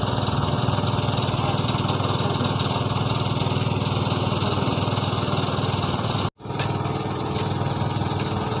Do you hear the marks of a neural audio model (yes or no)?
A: no